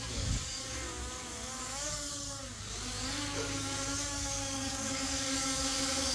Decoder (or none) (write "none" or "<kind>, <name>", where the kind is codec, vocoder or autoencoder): codec, DAC